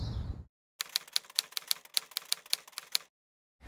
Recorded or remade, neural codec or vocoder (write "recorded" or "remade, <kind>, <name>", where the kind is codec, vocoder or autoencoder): recorded